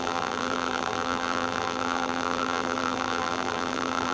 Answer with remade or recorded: remade